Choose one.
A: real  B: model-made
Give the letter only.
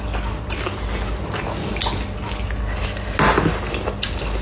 A